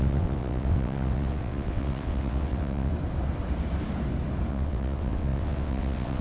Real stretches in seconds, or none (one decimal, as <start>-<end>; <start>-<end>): 2.9-4.5